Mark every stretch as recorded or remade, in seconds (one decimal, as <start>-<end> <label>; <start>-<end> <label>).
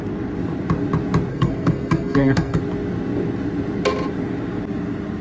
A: 0.0-1.3 recorded; 1.3-2.6 remade; 2.6-5.2 recorded